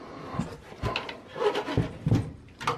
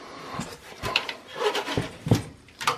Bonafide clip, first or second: first